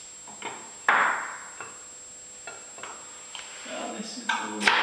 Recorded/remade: recorded